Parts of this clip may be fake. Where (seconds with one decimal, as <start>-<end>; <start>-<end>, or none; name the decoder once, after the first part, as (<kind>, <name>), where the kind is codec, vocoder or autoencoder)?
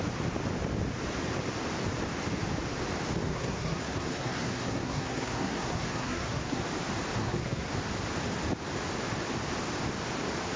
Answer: 3.3-6.6 (codec, SNAC); 7.2-7.7